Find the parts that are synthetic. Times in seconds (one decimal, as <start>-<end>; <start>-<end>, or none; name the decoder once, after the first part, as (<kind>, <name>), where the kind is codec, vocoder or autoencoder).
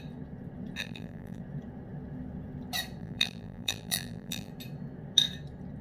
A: 0.8-1.4 (vocoder, BigVGAN v2); 3.0-4.5